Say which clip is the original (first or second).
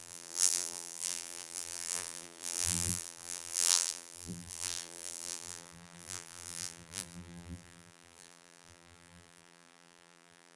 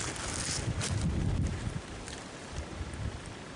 second